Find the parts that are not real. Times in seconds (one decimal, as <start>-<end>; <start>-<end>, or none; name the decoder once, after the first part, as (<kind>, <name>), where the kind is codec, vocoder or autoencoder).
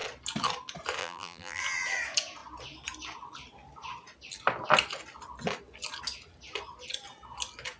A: 1.0-1.6 (vocoder, BigVGAN v2)